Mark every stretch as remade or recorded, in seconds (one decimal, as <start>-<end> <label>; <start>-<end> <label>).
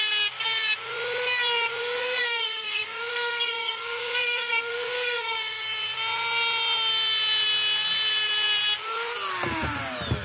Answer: 0.0-1.8 recorded; 1.8-5.6 remade; 5.6-10.2 recorded